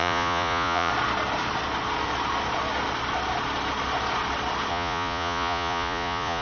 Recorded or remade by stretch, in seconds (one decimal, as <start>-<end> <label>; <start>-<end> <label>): 0.0-0.9 remade; 0.9-4.7 recorded; 4.7-6.4 remade